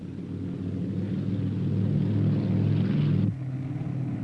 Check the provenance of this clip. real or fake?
real